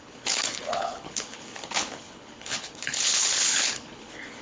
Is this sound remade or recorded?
remade